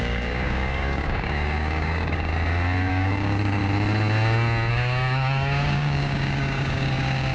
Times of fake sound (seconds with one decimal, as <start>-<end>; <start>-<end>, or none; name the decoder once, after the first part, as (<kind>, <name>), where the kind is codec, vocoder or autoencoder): 0.0-2.3 (codec, DAC); 2.9-3.6; 4.7-7.3